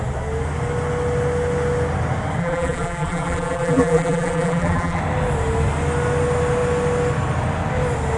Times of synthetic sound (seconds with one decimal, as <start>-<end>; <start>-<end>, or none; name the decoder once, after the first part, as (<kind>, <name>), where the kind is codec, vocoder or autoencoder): 2.4-5.0 (vocoder, BigVGAN v2)